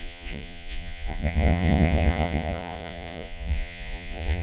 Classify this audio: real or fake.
fake